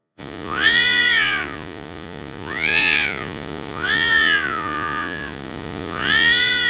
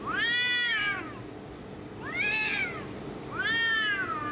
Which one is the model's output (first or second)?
first